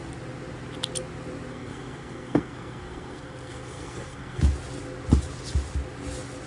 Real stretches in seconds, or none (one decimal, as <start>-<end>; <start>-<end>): 0.0-1.5; 4.4-6.5